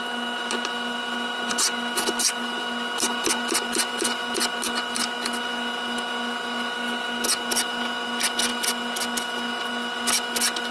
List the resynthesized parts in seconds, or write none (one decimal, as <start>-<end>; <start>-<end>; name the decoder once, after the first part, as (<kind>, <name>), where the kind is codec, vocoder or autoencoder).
none